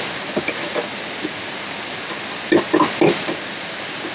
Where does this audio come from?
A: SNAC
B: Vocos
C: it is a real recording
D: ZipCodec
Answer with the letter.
C